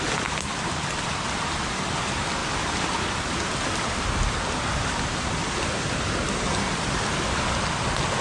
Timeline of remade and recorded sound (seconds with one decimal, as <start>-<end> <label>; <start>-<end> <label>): 0.0-8.2 recorded